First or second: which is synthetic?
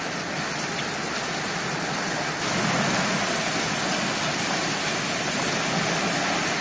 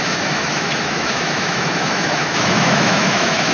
second